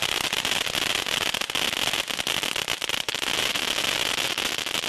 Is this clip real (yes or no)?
yes